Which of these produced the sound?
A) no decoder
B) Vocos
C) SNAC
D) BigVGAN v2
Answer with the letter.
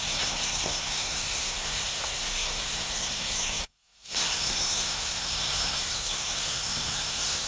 C